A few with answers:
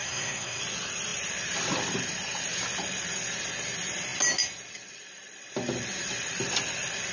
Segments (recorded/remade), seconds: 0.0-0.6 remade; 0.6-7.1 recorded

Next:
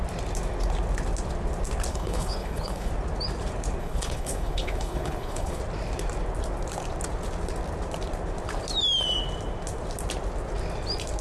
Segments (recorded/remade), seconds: 0.0-1.9 recorded; 1.9-2.9 remade; 2.9-3.8 recorded; 3.8-5.6 remade; 5.6-11.2 recorded

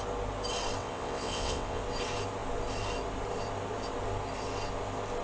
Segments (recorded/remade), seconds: 0.0-0.8 recorded; 0.8-1.8 remade; 1.8-5.2 recorded

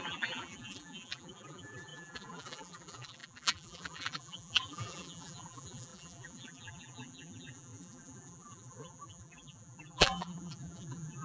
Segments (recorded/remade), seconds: 0.0-11.2 remade

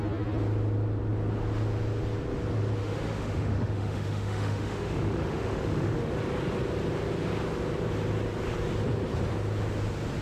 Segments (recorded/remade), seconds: 0.0-2.8 recorded; 2.8-6.1 remade; 6.1-10.2 recorded